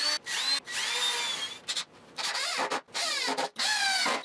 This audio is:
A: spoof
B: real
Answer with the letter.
A